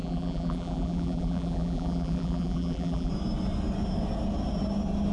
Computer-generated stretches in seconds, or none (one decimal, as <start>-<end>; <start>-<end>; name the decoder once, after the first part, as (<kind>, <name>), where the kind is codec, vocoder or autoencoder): 0.0-3.1 (vocoder, BigVGAN v2)

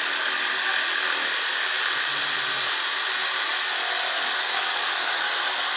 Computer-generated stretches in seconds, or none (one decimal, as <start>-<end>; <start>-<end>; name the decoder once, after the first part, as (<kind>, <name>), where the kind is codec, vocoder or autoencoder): 4.4-5.3 (codec, DAC)

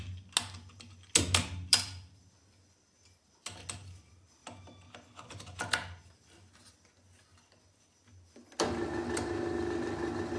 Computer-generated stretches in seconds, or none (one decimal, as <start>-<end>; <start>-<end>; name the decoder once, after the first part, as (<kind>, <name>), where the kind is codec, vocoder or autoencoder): none

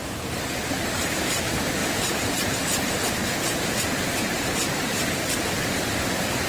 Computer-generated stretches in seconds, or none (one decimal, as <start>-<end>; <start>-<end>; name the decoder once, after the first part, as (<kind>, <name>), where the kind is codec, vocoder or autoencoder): 0.0-0.7 (vocoder, BigVGAN v2); 1.8-5.7

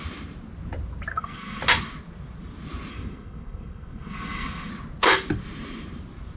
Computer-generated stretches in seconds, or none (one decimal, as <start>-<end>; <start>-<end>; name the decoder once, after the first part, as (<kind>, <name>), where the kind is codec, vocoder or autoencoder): 1.1-1.6 (codec, SNAC); 2.9-4.7

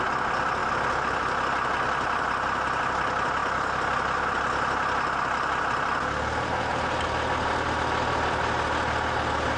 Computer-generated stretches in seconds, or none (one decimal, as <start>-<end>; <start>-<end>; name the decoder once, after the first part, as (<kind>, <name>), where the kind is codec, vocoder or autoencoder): none

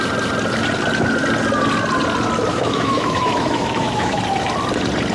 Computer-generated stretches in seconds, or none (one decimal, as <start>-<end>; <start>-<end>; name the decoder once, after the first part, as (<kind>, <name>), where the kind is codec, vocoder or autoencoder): 2.5-4.2 (autoencoder, DAC-VAE)

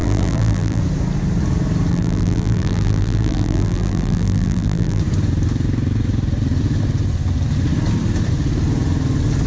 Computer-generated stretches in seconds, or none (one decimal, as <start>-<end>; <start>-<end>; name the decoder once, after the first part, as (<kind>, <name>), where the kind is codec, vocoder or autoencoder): 0.0-0.8 (vocoder, BigVGAN v2); 1.9-5.0